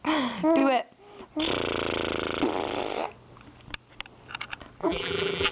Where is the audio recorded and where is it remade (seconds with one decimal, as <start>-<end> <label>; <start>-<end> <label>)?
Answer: 0.0-4.8 recorded; 4.8-5.5 remade

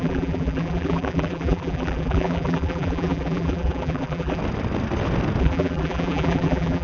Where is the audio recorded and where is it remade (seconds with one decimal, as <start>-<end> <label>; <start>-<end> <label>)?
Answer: 0.0-4.4 remade; 4.4-5.4 recorded; 5.4-6.8 remade